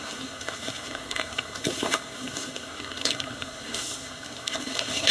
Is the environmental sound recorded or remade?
remade